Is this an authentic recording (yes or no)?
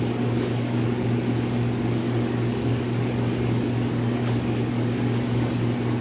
no